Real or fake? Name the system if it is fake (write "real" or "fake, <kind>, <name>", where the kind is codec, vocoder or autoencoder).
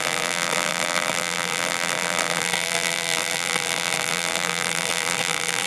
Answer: fake, vocoder, BigVGAN v2